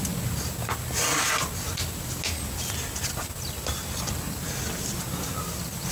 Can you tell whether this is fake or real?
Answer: real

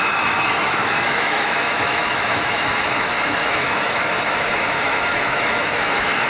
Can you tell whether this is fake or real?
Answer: fake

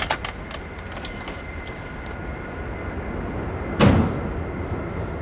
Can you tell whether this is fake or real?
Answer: real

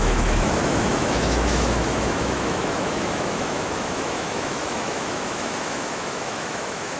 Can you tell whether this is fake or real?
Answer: fake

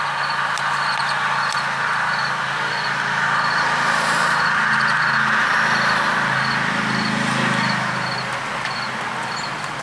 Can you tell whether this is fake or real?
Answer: real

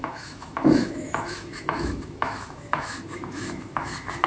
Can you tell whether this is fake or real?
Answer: fake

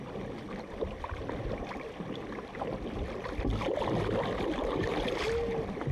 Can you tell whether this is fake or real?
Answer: real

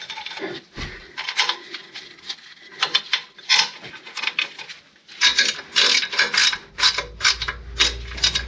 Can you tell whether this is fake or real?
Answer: real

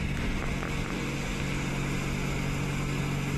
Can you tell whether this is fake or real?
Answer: real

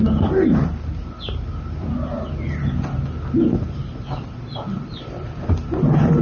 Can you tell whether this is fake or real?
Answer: real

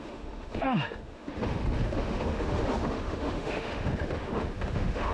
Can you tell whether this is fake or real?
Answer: fake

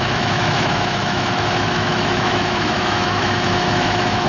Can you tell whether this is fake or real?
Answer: fake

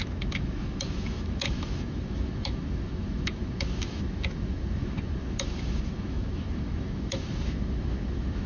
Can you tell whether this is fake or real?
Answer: fake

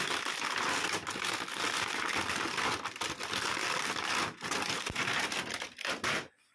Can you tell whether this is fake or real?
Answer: real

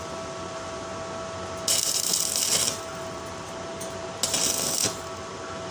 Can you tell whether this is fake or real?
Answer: real